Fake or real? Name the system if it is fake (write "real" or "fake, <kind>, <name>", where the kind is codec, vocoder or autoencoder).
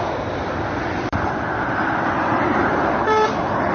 fake, vocoder, BigVGAN v2